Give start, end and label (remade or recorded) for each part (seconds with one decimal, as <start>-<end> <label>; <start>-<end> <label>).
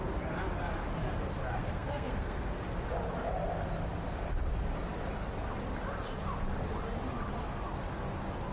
0.0-1.6 recorded; 1.6-2.5 remade; 2.5-8.5 recorded